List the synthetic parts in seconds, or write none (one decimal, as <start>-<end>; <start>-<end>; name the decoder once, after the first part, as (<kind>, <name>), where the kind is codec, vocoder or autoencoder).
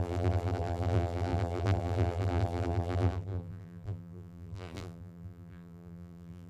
0.0-6.5 (vocoder, BigVGAN v2)